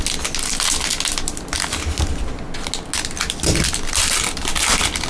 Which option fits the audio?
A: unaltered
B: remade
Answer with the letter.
A